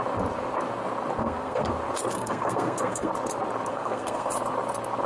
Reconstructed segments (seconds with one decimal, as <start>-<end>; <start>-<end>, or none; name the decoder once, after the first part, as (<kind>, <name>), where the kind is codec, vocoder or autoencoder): 1.2-1.7 (codec, SNAC); 2.1-3.1; 3.7-4.3

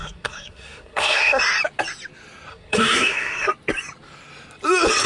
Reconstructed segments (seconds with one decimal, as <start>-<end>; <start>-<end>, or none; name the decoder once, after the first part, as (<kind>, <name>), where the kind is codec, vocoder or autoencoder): 0.0-1.4 (codec, SNAC); 2.5-3.5

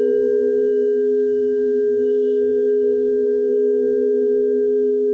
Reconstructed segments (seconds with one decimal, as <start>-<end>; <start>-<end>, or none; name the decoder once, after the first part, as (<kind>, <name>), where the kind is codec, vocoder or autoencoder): 0.0-5.1 (codec, SNAC)

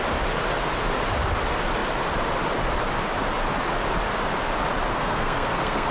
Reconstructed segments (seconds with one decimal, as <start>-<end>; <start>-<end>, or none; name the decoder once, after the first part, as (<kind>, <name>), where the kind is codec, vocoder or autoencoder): 4.9-5.9 (codec, SNAC)